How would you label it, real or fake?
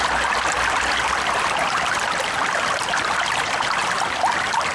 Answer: fake